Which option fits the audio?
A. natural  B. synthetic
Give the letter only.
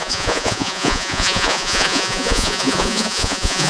B